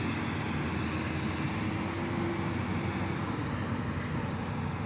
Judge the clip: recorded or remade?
recorded